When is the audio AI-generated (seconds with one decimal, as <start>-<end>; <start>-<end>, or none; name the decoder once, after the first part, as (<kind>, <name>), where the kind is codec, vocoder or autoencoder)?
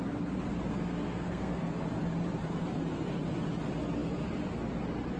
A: 0.7-1.7 (codec, SNAC)